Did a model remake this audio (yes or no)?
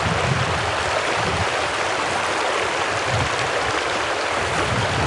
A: no